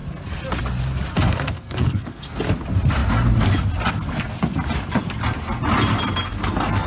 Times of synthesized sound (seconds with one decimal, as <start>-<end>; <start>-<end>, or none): 1.1-2.4